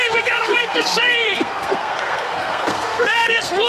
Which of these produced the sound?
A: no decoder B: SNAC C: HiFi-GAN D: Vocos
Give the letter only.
B